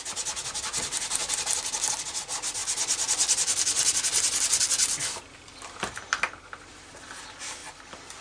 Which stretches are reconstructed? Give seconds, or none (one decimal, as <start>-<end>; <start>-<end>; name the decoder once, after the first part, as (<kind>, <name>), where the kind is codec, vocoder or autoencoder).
none